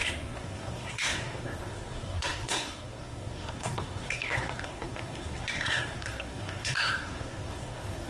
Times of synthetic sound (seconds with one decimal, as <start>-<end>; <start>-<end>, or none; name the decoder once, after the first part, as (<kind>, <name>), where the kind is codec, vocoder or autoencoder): 0.0-8.1 (codec, SNAC)